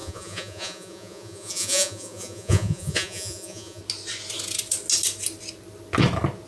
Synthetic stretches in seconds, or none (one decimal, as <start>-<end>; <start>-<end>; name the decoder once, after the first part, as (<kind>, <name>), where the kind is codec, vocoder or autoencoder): 0.0-3.8 (vocoder, Vocos)